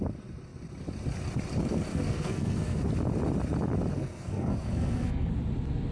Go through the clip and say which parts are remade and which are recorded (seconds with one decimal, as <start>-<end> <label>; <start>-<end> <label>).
0.0-1.9 recorded; 1.9-2.9 remade; 2.9-3.9 recorded; 3.9-5.3 remade; 5.3-5.9 recorded